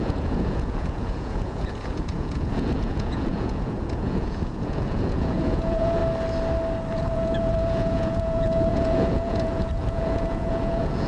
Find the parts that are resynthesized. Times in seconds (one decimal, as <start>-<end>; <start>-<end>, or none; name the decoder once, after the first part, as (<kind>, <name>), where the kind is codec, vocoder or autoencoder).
0.0-6.0 (vocoder, Vocos); 6.9-11.1